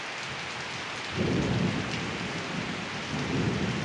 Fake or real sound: real